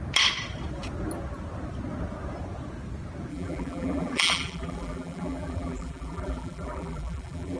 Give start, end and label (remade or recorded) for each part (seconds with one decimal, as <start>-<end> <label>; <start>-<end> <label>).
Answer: 0.0-3.3 recorded; 3.3-7.6 remade

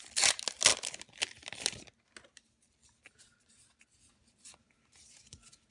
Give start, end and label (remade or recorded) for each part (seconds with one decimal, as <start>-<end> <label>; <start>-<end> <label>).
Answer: 0.0-5.7 recorded

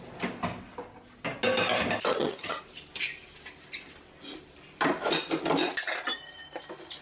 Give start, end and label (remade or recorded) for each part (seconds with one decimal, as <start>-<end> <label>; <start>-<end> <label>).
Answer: 0.0-2.1 recorded; 2.1-2.6 remade; 2.6-7.0 recorded

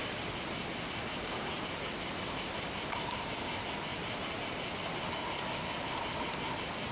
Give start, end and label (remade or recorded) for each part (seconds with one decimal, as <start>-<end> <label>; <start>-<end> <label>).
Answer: 0.0-6.9 recorded